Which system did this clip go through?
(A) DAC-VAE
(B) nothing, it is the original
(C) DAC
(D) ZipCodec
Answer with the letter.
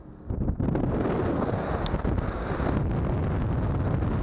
B